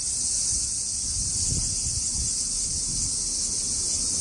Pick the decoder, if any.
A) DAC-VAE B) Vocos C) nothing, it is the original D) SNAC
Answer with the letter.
C